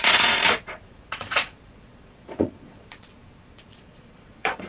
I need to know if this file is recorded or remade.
remade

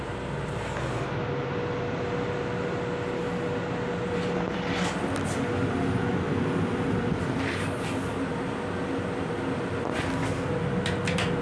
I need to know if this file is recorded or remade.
recorded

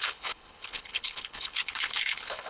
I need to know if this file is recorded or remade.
remade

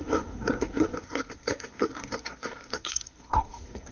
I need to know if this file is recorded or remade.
remade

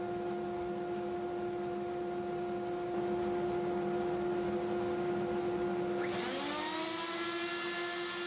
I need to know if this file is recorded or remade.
recorded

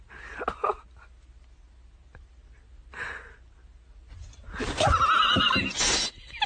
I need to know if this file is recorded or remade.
recorded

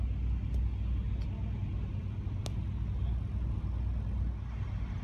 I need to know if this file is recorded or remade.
recorded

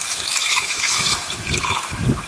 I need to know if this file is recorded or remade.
remade